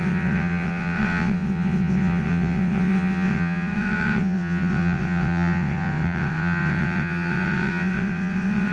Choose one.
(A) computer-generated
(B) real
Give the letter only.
A